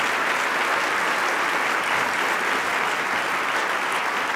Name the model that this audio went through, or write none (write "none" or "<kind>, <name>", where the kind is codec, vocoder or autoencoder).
none